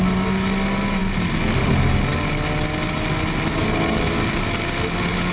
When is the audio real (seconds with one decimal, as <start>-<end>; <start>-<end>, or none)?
0.0-5.3